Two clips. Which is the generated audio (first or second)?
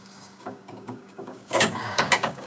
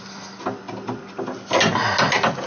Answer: first